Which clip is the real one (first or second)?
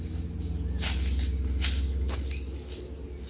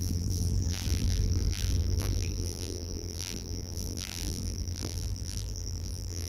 first